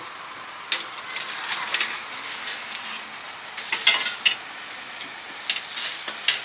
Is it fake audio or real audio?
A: real